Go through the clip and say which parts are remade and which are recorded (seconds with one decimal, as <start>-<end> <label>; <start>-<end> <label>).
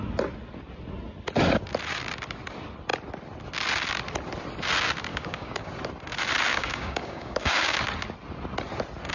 0.0-5.1 recorded; 5.1-5.7 remade; 5.7-6.5 recorded; 6.5-7.8 remade; 7.8-9.1 recorded